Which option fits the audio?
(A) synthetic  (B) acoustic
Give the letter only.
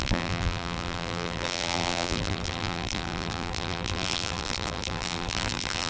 A